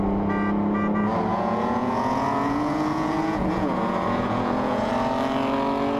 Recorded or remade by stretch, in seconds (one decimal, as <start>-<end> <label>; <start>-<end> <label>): 0.0-1.3 recorded; 1.3-4.9 remade; 4.9-6.0 recorded